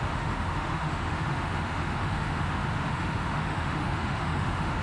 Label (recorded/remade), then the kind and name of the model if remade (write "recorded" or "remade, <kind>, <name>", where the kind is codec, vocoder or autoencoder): remade, autoencoder, DAC-VAE